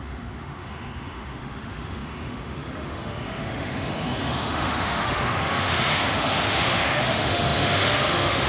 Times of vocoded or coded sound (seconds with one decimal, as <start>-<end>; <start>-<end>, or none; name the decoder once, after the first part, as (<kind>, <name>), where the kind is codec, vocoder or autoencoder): 0.0-8.5 (autoencoder, DAC-VAE)